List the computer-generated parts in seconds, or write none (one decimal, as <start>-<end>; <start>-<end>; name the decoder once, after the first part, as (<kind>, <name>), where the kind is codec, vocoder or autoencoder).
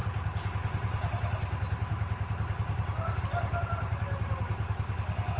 none